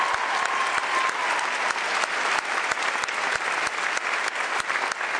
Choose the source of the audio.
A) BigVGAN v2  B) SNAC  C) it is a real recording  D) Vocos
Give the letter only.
C